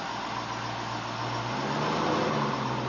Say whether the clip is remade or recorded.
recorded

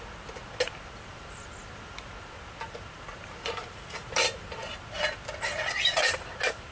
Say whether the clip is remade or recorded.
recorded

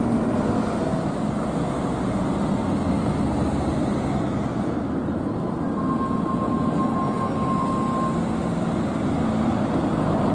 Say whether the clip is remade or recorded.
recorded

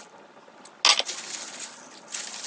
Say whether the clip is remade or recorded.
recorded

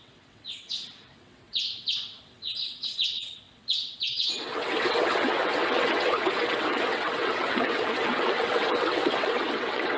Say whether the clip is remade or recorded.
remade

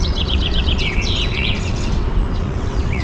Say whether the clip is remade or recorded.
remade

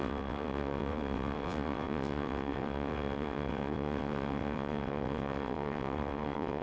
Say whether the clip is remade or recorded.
remade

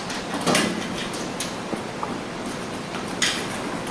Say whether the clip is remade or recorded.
recorded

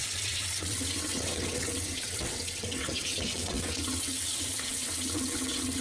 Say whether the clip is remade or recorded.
remade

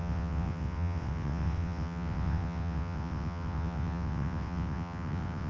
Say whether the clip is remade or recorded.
remade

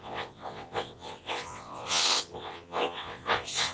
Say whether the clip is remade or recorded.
remade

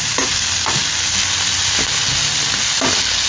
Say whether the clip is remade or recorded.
recorded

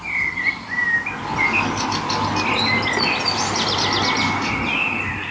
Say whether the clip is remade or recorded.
recorded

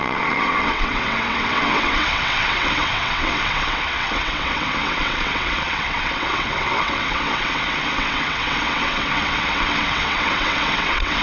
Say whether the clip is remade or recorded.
remade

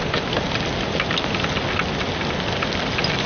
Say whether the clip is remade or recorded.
recorded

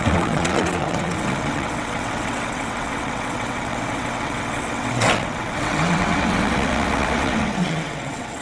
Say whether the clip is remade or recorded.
remade